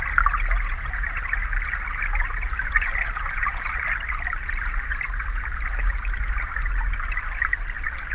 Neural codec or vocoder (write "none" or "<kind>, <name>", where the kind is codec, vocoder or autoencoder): none